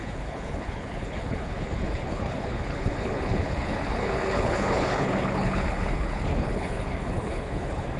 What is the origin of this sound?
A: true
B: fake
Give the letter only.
B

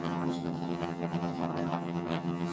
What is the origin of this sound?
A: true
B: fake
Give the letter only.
B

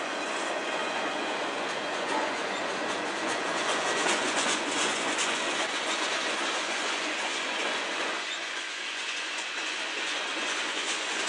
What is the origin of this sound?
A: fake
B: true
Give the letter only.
A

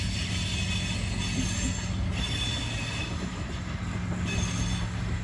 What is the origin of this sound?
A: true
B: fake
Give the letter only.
A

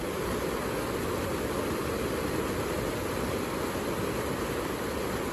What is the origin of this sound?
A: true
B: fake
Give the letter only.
A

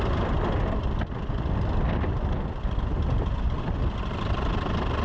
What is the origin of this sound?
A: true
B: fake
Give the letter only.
A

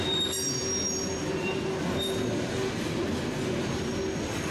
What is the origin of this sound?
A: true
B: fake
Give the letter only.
A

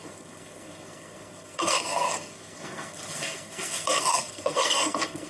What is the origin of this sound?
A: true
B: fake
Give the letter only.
B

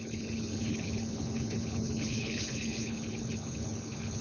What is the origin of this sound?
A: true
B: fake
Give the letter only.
B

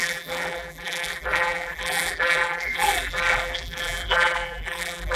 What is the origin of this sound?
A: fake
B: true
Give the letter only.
A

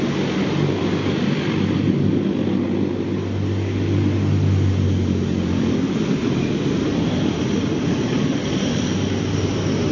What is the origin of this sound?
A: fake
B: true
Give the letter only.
B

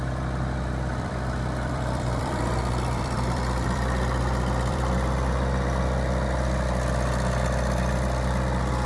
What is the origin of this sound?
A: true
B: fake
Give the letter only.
B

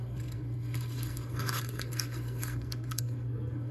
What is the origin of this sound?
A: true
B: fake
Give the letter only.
B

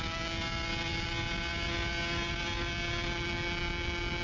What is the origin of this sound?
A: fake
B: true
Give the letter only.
B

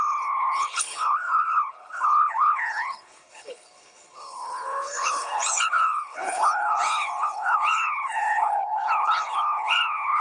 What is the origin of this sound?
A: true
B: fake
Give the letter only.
B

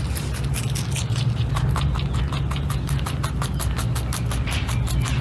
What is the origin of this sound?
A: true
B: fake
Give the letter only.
A